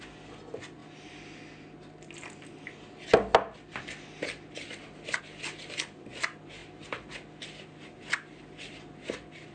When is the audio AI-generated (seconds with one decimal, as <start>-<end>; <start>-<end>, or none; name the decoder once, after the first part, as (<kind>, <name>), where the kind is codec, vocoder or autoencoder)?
none